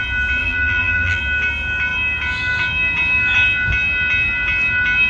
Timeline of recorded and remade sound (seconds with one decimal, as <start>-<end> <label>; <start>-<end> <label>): 0.0-0.4 recorded; 0.4-1.2 remade; 1.2-5.1 recorded